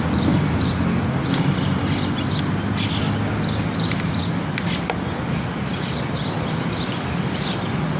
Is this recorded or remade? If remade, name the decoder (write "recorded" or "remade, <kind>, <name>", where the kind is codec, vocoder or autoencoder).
recorded